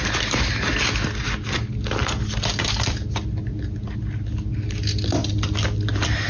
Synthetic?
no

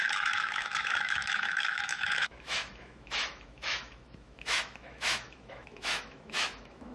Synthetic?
yes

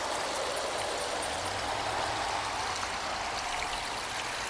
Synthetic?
no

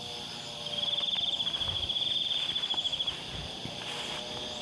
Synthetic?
no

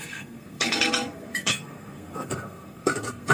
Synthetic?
yes